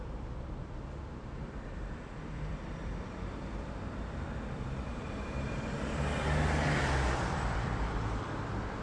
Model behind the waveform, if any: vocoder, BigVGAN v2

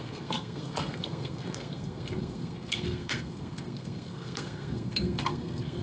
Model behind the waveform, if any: codec, SNAC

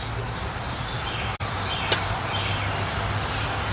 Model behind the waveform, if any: none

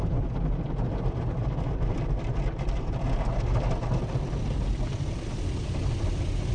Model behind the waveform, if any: none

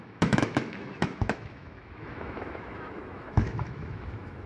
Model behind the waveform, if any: autoencoder, DAC-VAE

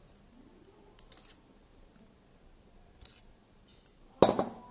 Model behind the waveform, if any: none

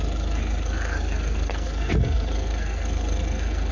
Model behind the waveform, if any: codec, SNAC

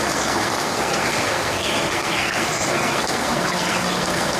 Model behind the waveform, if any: codec, SNAC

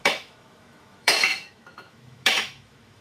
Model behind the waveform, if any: autoencoder, DAC-VAE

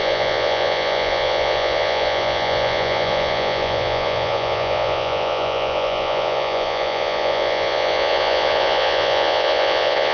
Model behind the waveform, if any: vocoder, Vocos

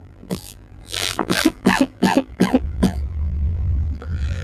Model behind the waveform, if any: vocoder, BigVGAN v2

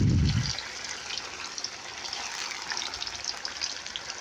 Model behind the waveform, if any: none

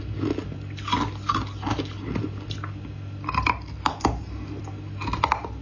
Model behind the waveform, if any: none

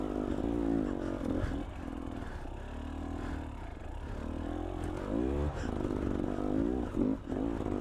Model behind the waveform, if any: none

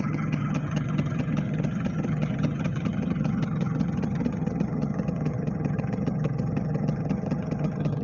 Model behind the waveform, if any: vocoder, HiFi-GAN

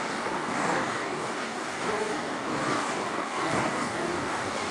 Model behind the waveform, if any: codec, DAC